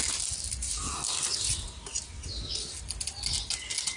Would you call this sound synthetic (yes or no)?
no